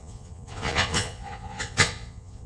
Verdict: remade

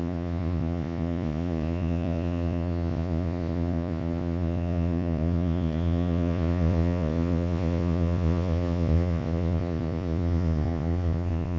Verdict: remade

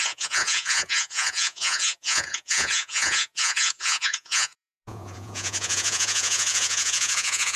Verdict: remade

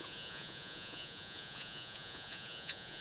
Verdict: remade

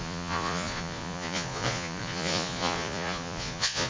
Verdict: remade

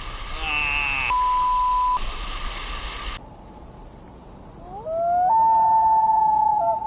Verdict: recorded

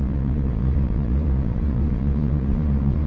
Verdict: remade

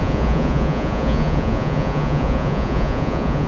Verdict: remade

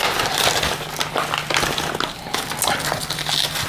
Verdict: recorded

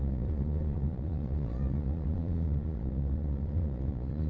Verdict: remade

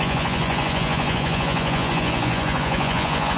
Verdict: remade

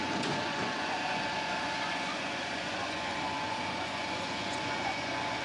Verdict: remade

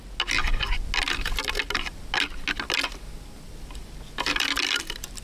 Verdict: recorded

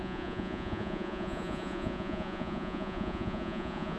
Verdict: remade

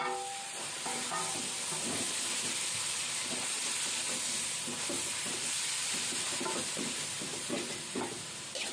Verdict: recorded